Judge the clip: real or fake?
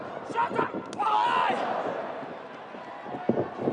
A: real